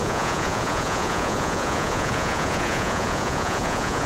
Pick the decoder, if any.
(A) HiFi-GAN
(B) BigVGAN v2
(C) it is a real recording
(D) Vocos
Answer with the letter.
D